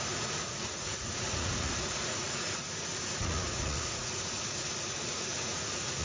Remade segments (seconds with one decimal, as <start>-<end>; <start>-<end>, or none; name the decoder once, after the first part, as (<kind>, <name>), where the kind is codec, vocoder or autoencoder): 0.0-6.0 (vocoder, Vocos)